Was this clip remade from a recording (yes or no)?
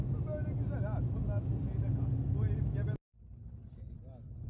no